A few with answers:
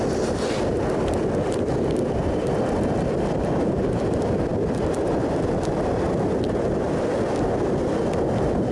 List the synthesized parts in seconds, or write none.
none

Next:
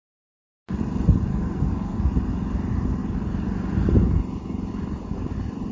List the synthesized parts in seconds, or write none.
1.3-2.1 (codec, SNAC)